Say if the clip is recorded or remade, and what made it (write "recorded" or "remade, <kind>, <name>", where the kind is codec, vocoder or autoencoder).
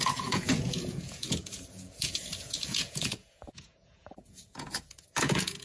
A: remade, vocoder, Vocos